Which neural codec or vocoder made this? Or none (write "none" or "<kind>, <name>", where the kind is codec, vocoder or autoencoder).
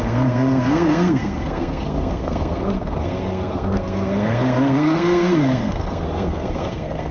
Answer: codec, SNAC